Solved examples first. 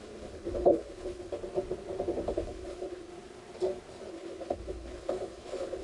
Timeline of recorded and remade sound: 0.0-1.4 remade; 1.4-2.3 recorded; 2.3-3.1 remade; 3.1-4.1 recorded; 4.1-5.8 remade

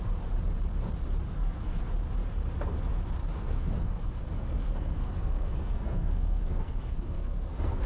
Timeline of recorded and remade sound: 0.0-1.3 recorded; 1.3-1.8 remade; 1.8-3.2 recorded; 3.2-7.9 remade

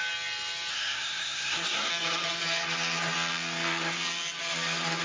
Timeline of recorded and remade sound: 0.0-0.7 recorded; 0.7-1.9 remade; 1.9-5.0 recorded

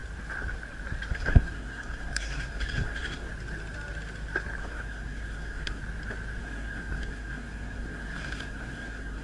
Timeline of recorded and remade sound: 0.0-1.1 recorded; 1.1-3.3 remade; 3.3-4.6 recorded; 4.6-5.8 remade; 5.8-6.4 recorded; 6.4-9.2 remade

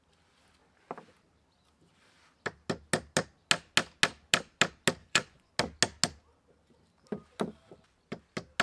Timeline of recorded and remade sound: 0.0-5.0 recorded; 5.0-5.5 remade; 5.5-8.6 recorded

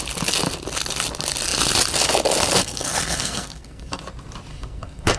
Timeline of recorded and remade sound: 0.0-2.6 recorded; 2.6-4.0 remade; 4.0-4.5 recorded; 4.5-5.2 remade

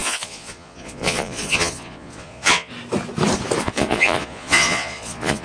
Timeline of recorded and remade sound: 0.0-2.7 remade; 2.7-3.6 recorded; 3.6-5.4 remade

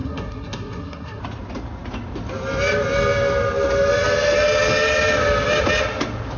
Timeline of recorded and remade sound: 0.0-1.2 remade; 1.2-6.4 recorded